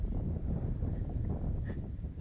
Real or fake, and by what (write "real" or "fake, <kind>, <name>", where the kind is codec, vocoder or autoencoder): real